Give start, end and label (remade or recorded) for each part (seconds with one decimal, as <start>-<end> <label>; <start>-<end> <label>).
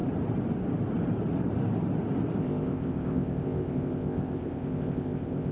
0.0-2.4 recorded; 2.4-5.5 remade